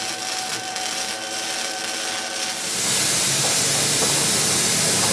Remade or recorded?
recorded